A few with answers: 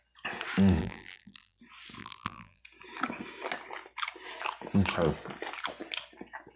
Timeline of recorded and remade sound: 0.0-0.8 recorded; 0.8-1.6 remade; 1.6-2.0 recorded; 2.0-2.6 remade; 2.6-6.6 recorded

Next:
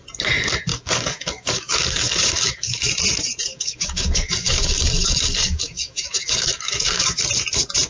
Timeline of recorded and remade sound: 0.0-0.7 recorded; 0.7-2.9 remade; 2.9-3.5 recorded; 3.5-7.2 remade; 7.2-7.9 recorded

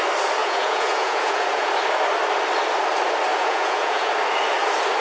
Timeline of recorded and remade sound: 0.0-0.4 recorded; 0.4-1.7 remade; 1.7-3.3 recorded; 3.3-4.1 remade; 4.1-5.0 recorded

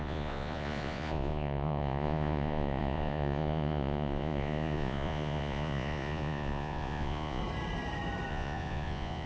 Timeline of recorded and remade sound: 0.0-7.4 remade; 7.4-8.3 recorded; 8.3-9.3 remade